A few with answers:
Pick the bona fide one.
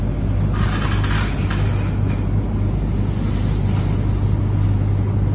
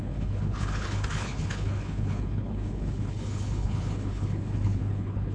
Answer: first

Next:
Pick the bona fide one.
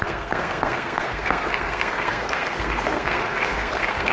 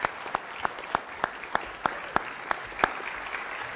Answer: second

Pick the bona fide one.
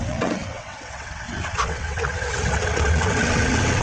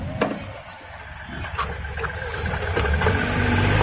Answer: second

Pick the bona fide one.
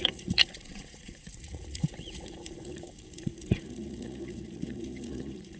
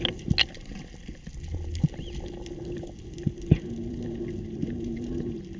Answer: second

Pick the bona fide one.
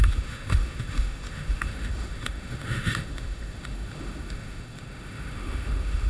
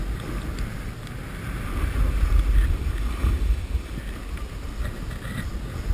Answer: second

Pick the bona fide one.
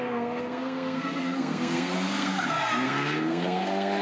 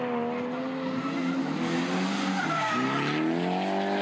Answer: second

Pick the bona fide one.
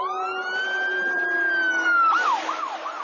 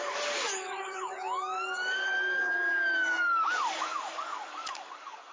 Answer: first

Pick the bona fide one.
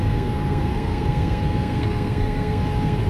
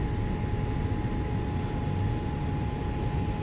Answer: second